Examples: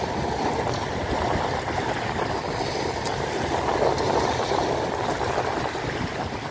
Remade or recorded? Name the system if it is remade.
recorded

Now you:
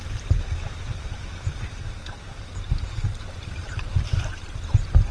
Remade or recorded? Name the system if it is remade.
remade, vocoder, BigVGAN v2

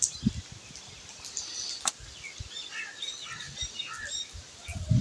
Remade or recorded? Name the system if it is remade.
recorded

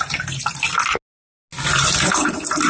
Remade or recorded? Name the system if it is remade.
recorded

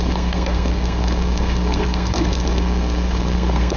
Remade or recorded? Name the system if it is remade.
remade, codec, SNAC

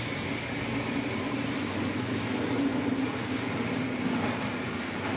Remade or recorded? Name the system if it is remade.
recorded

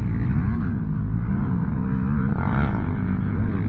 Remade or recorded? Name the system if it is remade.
recorded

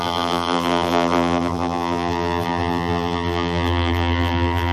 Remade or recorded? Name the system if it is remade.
remade, vocoder, BigVGAN v2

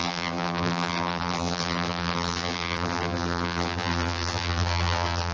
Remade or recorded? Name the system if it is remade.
remade, vocoder, BigVGAN v2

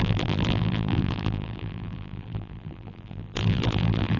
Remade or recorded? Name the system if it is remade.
remade, vocoder, BigVGAN v2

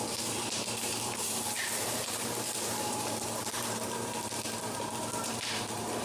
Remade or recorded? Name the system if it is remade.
remade, vocoder, BigVGAN v2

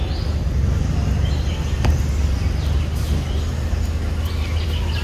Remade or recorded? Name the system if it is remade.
recorded